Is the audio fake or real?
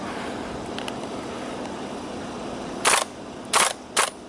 fake